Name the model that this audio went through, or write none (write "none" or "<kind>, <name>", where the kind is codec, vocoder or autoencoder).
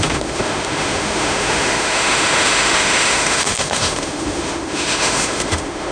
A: autoencoder, DAC-VAE